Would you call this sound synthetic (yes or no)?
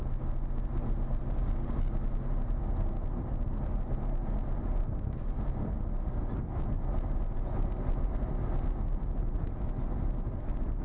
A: no